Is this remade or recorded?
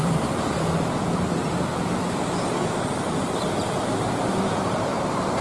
remade